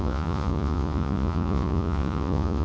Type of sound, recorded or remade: remade